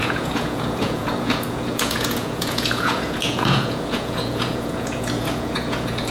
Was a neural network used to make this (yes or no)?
yes